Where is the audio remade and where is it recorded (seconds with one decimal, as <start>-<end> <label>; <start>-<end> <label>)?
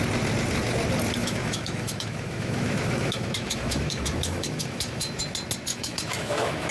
0.0-1.2 recorded; 1.2-5.2 remade; 5.2-5.7 recorded; 5.7-6.7 remade